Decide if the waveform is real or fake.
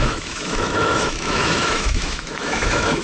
fake